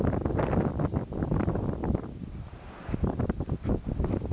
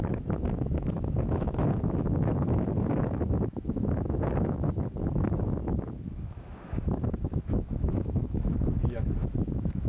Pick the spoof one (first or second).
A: second